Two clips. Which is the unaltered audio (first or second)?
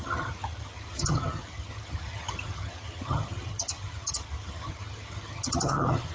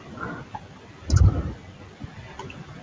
second